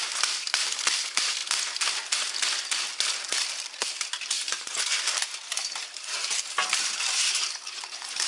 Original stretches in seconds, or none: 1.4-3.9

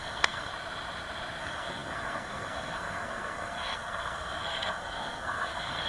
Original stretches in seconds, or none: 0.5-1.4

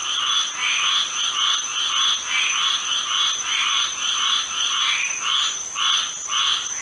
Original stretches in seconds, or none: 1.2-1.7; 4.8-6.8